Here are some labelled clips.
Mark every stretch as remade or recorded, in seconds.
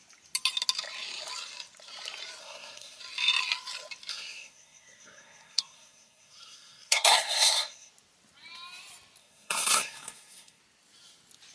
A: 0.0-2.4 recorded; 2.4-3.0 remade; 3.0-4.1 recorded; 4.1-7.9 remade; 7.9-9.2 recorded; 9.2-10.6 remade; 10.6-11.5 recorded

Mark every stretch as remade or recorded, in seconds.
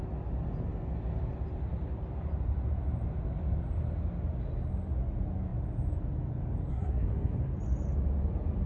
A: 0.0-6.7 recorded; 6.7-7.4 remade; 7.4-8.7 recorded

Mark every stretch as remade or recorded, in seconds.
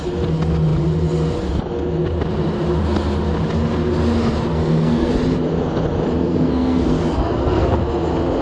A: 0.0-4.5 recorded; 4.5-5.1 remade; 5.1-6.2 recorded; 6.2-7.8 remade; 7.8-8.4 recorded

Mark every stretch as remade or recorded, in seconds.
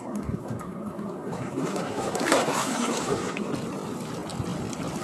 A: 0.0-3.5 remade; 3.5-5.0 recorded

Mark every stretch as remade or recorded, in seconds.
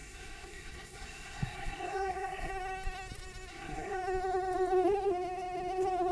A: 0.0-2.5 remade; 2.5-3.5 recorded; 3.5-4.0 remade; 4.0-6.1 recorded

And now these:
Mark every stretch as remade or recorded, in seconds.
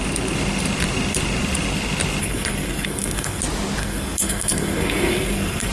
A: 0.0-2.2 recorded; 2.2-3.4 remade; 3.4-3.8 recorded; 3.8-5.7 remade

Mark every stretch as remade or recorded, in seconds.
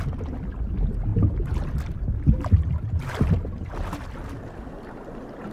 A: 0.0-5.5 recorded